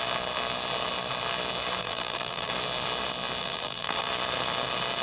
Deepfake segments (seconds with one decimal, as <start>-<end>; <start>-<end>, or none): 1.8-2.5; 3.4-4.1